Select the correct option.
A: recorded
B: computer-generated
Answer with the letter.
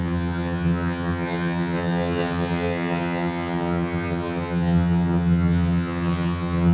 B